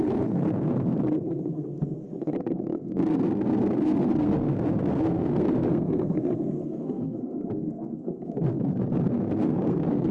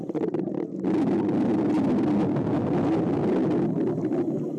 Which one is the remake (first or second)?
first